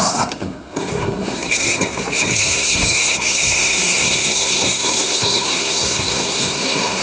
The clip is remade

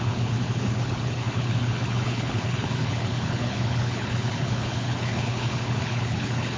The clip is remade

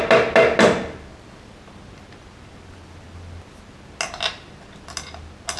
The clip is recorded